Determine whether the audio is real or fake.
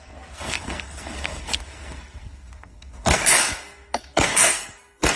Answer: fake